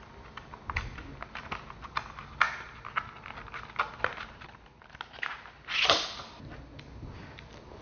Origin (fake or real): real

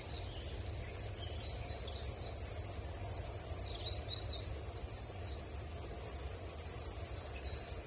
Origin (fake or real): real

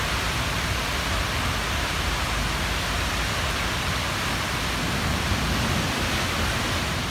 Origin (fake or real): real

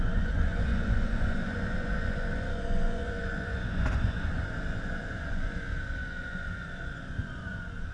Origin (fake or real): fake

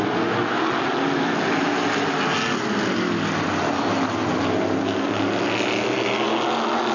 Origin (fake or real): real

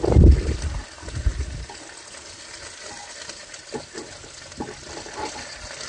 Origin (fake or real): real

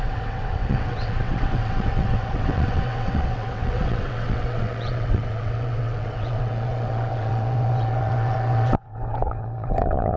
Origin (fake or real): fake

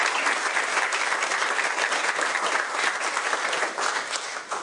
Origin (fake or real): real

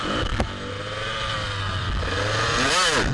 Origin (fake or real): real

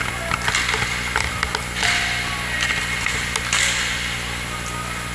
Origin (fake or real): real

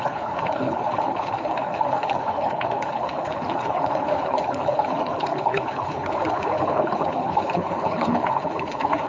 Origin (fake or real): fake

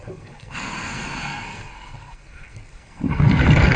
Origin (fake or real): fake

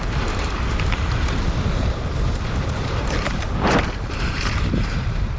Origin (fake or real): fake